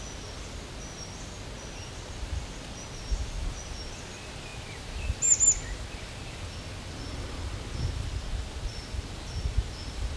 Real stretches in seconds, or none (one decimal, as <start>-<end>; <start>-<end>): 0.0-10.2